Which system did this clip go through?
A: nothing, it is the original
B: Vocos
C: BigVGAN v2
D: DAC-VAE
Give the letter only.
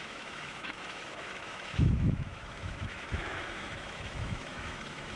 D